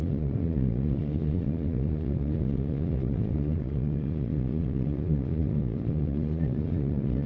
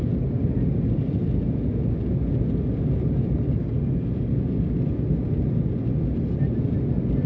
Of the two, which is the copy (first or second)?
first